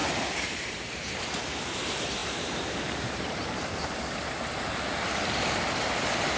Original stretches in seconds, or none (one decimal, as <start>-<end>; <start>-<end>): 1.2-2.2; 4.7-6.4